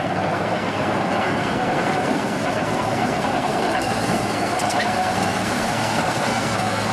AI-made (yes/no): yes